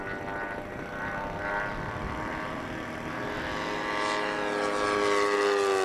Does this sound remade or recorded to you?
recorded